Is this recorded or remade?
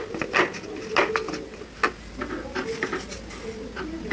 recorded